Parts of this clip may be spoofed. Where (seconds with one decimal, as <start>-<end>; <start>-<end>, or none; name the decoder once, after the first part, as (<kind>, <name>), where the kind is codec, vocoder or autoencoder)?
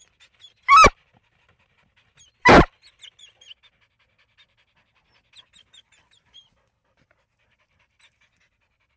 none